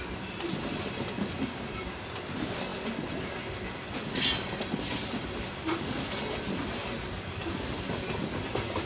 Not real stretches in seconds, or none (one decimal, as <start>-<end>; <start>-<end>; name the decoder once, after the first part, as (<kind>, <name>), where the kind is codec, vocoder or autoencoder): none

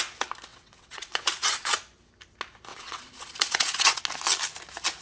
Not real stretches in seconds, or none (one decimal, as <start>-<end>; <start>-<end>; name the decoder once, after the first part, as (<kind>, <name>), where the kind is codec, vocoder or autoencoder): 0.5-1.8 (vocoder, WaveNeXt); 2.7-4.0

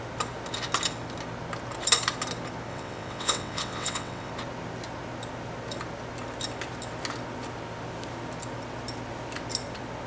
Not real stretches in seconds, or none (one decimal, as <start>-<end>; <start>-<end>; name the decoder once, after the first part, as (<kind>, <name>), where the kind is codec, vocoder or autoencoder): 2.7-4.3 (vocoder, WaveNeXt)

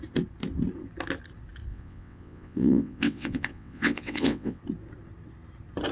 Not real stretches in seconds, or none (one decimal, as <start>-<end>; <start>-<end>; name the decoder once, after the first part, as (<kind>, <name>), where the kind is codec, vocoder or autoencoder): 1.7-4.6 (vocoder, WaveNeXt)

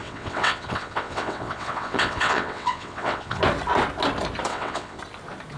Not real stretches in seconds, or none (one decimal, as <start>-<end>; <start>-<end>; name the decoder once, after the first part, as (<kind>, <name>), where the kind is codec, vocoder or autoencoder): 0.0-3.4 (vocoder, WaveNeXt); 4.5-5.0

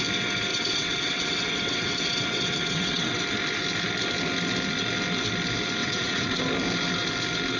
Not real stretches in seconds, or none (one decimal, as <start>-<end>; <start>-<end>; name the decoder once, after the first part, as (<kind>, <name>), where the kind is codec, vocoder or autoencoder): 0.5-3.2 (vocoder, WaveNeXt); 5.8-6.4